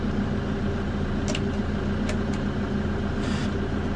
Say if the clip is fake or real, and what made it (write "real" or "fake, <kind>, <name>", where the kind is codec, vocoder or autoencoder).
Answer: real